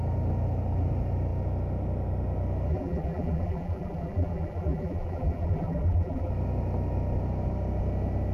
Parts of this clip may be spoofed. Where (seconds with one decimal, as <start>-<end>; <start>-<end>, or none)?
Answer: 2.7-6.3